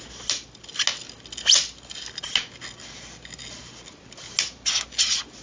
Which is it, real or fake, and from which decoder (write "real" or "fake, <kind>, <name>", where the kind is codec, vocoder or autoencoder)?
real